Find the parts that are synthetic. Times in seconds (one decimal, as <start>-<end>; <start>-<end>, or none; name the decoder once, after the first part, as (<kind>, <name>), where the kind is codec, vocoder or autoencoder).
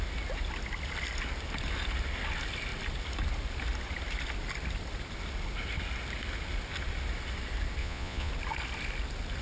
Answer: 7.8-8.3 (vocoder, Vocos)